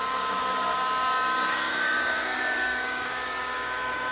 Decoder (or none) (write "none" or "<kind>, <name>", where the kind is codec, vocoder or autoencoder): codec, DAC